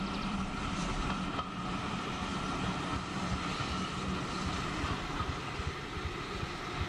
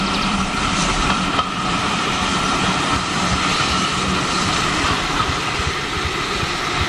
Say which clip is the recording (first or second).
first